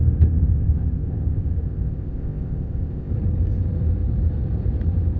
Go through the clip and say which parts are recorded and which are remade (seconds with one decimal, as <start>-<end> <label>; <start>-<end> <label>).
0.0-3.1 remade; 3.1-5.2 recorded